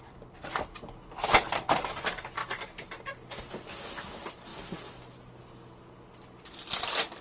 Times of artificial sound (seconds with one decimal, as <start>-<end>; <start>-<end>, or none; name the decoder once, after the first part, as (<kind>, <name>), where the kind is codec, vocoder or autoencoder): none